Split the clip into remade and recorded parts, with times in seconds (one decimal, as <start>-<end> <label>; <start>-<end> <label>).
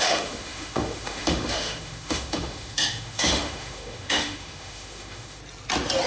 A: 0.0-5.4 remade; 5.4-6.1 recorded